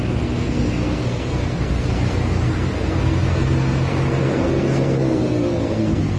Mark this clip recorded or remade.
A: remade